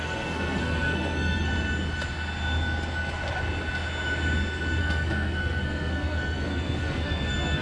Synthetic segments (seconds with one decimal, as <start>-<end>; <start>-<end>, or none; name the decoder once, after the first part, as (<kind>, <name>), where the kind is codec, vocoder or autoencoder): 0.0-1.5 (codec, SNAC); 4.8-7.6